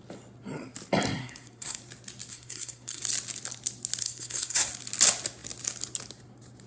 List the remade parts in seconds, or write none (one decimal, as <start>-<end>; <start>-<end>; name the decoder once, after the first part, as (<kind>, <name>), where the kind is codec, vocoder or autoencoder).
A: 1.2-1.8 (codec, SNAC); 2.3-3.0; 4.0-4.7